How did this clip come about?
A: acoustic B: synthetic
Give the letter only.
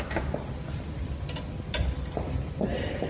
A